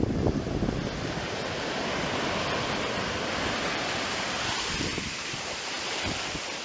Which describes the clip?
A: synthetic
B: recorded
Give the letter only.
B